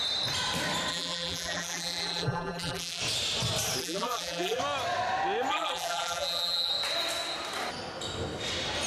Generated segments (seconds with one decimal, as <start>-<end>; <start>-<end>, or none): 0.9-3.0; 3.8-4.6; 5.5-6.7